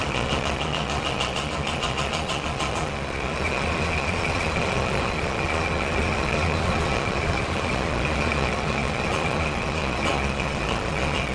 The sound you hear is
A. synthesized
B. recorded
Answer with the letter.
A